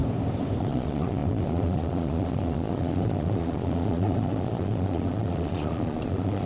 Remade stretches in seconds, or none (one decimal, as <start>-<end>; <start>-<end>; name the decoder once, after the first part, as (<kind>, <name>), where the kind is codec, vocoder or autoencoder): 0.6-6.5 (vocoder, Vocos)